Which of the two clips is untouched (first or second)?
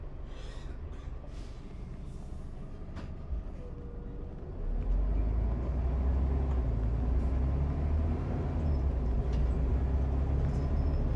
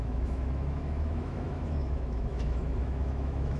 first